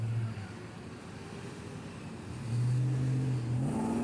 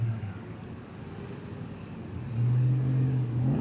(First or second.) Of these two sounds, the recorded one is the first